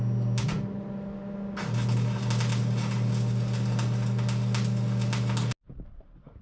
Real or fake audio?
real